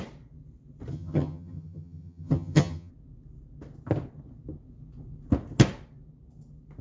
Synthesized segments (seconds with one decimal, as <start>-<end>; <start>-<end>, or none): 0.9-2.9